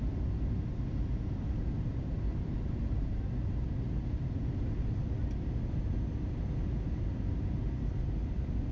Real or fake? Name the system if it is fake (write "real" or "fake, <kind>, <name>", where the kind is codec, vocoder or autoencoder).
real